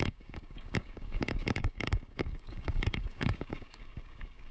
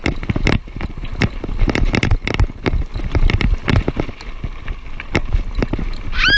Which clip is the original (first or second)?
second